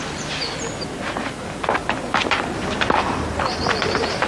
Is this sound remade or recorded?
recorded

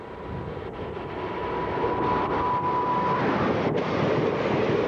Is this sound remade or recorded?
recorded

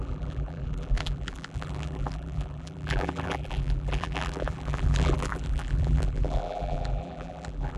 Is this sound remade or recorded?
remade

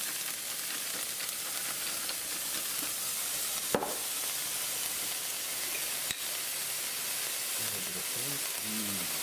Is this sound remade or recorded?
recorded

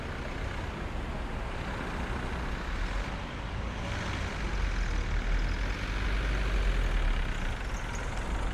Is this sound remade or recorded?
recorded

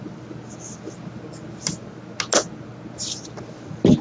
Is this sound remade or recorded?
recorded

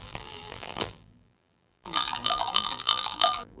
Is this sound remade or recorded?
remade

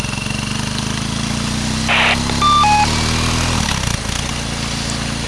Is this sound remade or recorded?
recorded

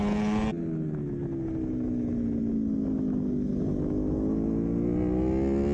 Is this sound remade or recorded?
recorded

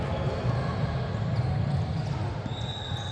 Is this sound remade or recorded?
recorded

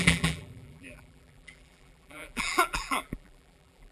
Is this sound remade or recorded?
remade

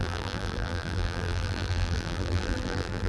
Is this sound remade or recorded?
remade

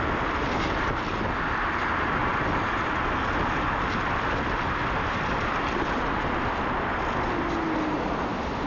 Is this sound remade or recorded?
recorded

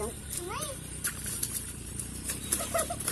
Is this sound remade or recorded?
remade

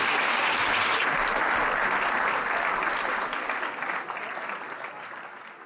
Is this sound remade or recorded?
recorded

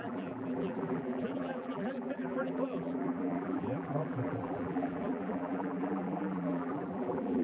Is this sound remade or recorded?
remade